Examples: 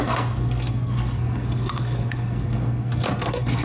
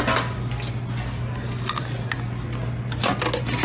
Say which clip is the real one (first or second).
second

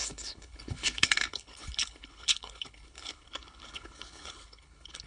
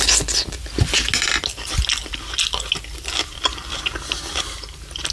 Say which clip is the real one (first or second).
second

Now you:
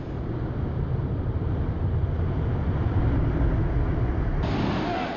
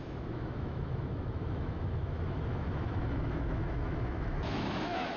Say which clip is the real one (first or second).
first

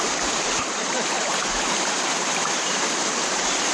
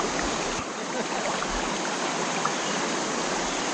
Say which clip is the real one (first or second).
second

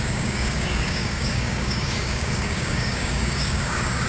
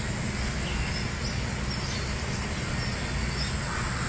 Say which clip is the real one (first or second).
second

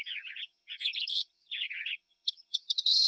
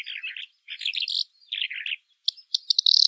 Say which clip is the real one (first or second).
second